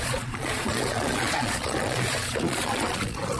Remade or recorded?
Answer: remade